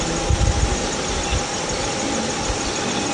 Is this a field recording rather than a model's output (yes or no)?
yes